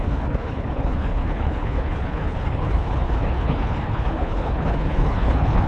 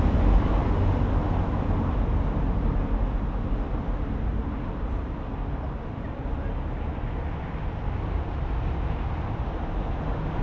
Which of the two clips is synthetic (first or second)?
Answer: first